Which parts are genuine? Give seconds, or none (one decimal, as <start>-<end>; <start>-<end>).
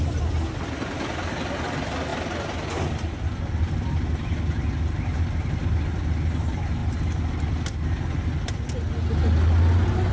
0.0-10.1